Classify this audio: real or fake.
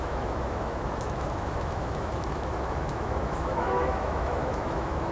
fake